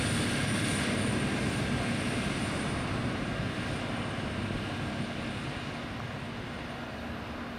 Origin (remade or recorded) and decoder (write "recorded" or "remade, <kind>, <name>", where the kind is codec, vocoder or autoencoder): recorded